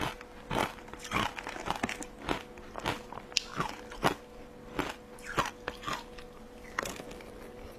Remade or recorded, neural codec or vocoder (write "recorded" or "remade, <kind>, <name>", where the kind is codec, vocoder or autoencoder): recorded